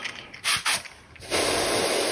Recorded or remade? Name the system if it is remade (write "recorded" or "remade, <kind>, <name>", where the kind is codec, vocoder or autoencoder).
recorded